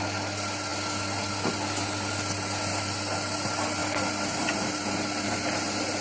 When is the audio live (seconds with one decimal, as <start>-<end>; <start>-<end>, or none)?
0.0-6.0